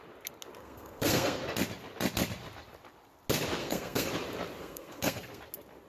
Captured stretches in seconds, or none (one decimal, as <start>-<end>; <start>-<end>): 0.0-0.6; 1.4-3.6; 4.1-4.6; 5.4-5.9